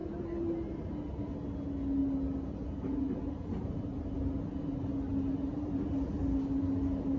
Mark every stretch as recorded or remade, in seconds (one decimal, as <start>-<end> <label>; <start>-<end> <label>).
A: 0.0-7.2 recorded